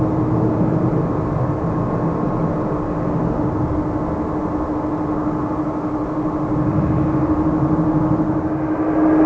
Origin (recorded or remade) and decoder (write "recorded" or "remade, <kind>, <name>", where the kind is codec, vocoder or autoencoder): recorded